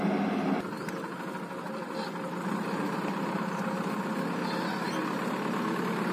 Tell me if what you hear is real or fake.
real